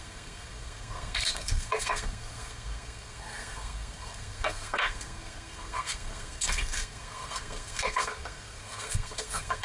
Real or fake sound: fake